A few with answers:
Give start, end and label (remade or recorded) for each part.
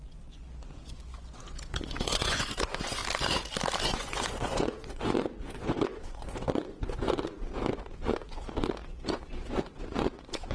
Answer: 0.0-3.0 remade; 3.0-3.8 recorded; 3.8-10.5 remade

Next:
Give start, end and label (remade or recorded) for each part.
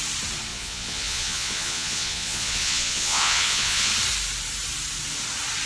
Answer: 0.0-0.5 recorded; 0.5-3.9 remade; 3.9-5.7 recorded